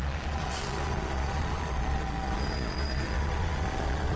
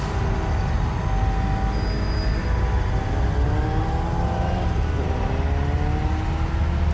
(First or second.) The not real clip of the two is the first